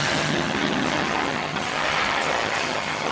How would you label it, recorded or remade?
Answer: remade